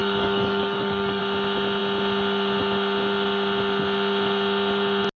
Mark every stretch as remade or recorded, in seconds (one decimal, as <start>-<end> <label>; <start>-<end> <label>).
0.0-1.2 remade; 1.2-5.2 recorded

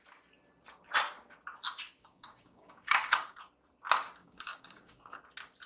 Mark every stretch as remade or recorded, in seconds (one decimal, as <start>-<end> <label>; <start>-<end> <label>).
0.0-2.0 recorded; 2.0-3.4 remade; 3.4-4.2 recorded; 4.2-5.2 remade; 5.2-5.7 recorded